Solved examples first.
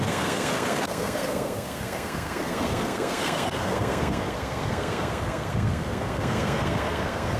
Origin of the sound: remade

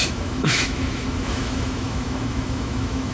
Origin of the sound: remade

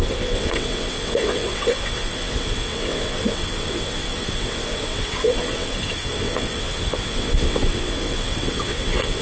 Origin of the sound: remade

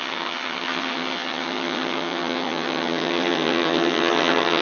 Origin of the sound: remade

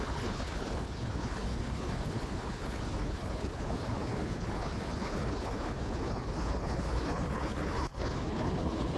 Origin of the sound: remade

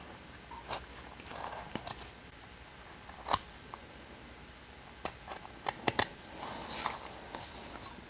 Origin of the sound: recorded